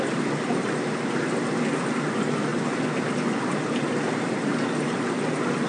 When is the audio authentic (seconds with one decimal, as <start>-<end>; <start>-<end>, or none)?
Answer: 0.0-5.7